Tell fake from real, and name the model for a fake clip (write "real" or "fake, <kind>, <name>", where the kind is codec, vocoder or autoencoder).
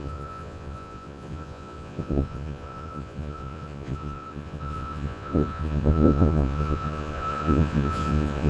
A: fake, vocoder, Vocos